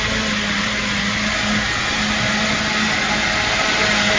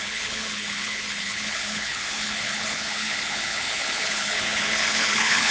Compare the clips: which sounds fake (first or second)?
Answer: second